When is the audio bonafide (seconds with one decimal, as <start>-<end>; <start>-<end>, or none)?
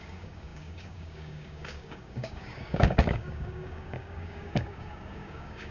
none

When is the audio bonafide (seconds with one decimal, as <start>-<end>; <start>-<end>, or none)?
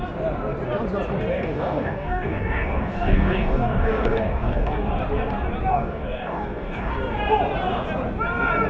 0.0-1.3; 4.9-5.7; 6.9-8.7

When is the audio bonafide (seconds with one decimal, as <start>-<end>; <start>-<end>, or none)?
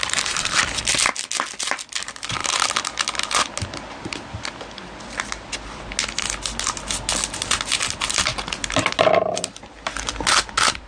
0.0-10.9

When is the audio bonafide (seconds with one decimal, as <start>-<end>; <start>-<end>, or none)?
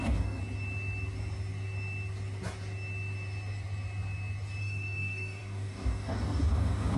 0.4-4.6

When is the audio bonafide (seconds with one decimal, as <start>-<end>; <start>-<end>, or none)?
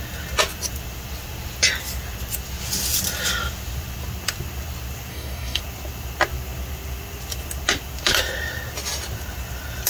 0.0-5.1; 5.6-9.9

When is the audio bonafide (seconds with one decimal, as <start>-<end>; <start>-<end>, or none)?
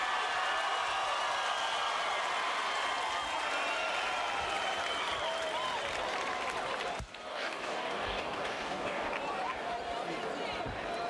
0.0-7.3; 9.1-11.1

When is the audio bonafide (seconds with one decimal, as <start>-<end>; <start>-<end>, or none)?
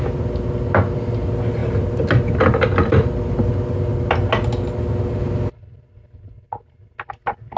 0.0-7.6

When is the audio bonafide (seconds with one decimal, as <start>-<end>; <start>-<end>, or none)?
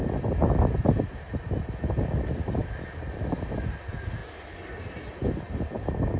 0.0-6.2